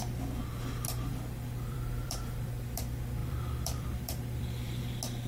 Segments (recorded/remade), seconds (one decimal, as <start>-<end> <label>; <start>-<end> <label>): 0.0-1.1 recorded; 1.1-2.8 remade; 2.8-3.2 recorded; 3.2-4.8 remade; 4.8-5.3 recorded

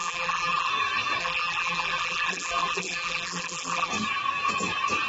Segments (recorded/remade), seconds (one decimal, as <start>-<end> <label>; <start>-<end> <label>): 0.0-0.7 remade; 0.7-1.2 recorded; 1.2-3.9 remade; 3.9-5.1 recorded

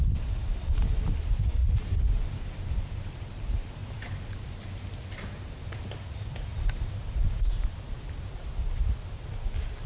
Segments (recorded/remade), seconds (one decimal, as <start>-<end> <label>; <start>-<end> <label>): 0.0-9.9 remade

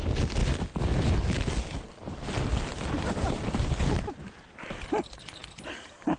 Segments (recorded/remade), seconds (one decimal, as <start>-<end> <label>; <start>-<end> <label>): 0.0-2.7 recorded; 2.7-5.0 remade; 5.0-6.2 recorded